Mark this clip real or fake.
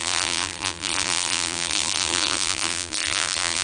fake